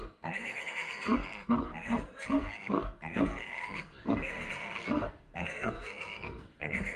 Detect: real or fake fake